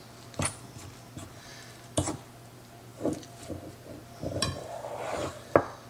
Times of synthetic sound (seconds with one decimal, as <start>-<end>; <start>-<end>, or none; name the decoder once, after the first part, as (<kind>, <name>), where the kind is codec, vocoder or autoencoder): 1.5-2.5 (vocoder, BigVGAN v2); 2.9-5.5